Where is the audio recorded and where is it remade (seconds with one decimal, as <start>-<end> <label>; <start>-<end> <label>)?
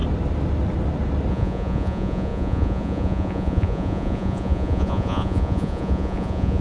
0.0-1.3 recorded; 1.3-6.6 remade